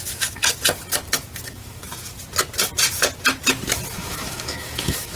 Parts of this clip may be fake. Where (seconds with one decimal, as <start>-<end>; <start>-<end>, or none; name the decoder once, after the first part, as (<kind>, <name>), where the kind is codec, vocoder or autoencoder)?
0.0-0.4 (autoencoder, DAC-VAE); 1.5-1.9; 3.9-5.2